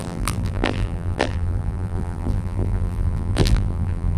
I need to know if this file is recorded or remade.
remade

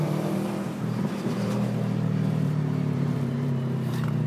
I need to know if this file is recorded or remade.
remade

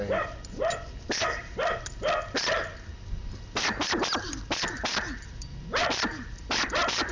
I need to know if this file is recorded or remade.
recorded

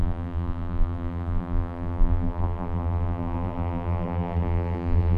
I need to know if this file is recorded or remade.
remade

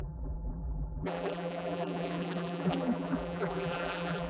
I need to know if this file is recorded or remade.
remade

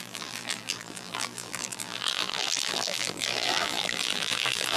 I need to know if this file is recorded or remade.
remade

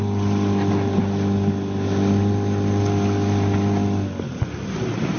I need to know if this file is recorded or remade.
recorded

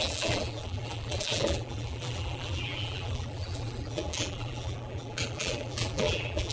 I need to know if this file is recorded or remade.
remade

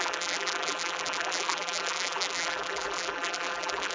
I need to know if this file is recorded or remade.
remade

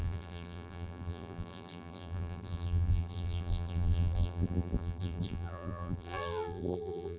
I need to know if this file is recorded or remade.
remade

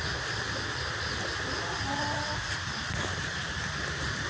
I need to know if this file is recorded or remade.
remade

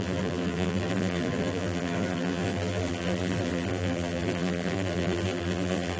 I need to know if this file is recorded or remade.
remade